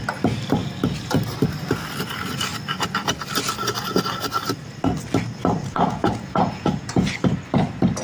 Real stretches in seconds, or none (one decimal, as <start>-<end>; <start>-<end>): 0.0-5.6; 7.1-8.0